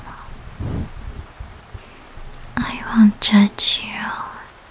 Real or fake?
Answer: real